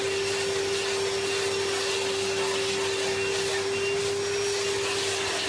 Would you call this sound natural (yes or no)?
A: yes